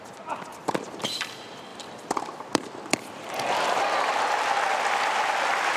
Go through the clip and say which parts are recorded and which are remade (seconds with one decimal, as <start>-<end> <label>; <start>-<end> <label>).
0.0-0.5 recorded; 0.5-1.0 remade; 1.0-1.7 recorded; 1.7-4.0 remade; 4.0-5.8 recorded